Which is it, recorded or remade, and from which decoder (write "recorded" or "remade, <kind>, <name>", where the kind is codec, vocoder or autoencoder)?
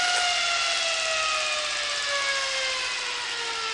recorded